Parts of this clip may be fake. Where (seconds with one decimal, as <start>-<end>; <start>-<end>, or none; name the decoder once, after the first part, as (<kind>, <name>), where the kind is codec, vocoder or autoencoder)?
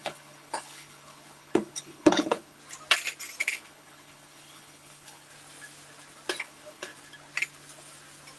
0.0-2.6 (codec, HILCodec); 3.4-5.3; 6.4-6.9